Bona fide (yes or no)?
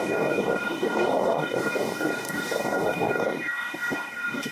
no